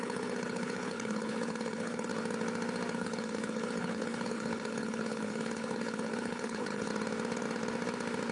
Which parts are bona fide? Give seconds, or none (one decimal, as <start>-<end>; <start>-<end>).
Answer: 2.1-2.9; 6.9-8.3